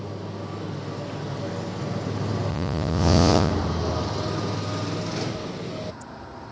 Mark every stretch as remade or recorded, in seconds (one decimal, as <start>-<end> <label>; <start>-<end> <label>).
0.0-2.5 recorded; 2.5-3.5 remade; 3.5-6.5 recorded